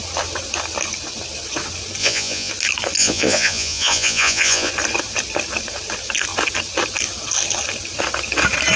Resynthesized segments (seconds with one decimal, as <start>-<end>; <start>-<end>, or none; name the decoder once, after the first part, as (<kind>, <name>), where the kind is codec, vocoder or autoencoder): 2.0-2.5 (vocoder, Vocos); 3.0-4.7

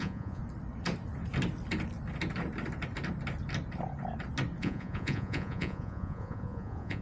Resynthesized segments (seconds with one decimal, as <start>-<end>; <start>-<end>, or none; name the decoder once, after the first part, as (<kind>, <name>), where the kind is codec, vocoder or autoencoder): 0.0-0.4 (vocoder, Vocos); 4.6-7.0